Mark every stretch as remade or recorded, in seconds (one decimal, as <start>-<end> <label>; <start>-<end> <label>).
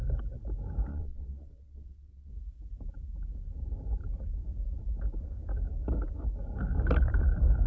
0.0-0.9 recorded; 0.9-2.3 remade; 2.3-7.7 recorded